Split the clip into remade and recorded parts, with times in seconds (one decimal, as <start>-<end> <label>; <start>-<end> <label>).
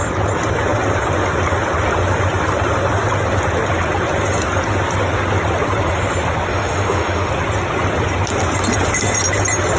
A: 0.0-6.5 recorded; 6.5-7.3 remade; 7.3-9.8 recorded